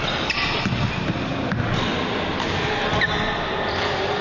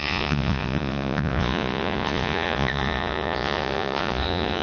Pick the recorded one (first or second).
first